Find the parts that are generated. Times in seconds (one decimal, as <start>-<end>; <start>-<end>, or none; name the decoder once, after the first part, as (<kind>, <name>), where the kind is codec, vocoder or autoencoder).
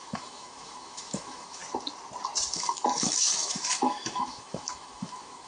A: 0.0-1.6 (autoencoder, DAC-VAE); 2.5-5.5